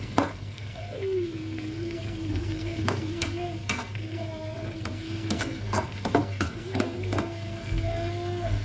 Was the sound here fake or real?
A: fake